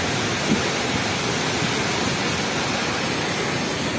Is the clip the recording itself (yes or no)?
yes